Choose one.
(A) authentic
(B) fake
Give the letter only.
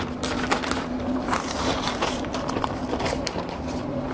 B